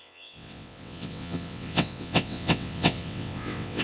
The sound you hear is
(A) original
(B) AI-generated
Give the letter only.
B